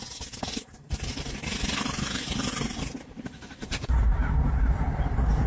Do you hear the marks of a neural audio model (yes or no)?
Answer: no